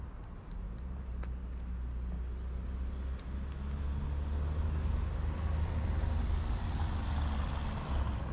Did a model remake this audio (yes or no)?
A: no